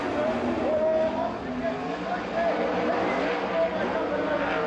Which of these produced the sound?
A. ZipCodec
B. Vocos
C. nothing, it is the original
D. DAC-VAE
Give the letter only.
C